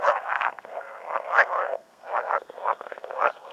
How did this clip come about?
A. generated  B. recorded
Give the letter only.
A